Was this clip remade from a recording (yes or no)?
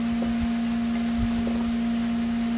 no